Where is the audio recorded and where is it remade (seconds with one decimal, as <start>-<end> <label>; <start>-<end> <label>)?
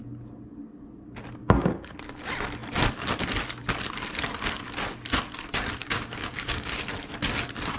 0.0-1.4 recorded; 1.4-1.9 remade; 1.9-5.8 recorded; 5.8-6.8 remade; 6.8-7.8 recorded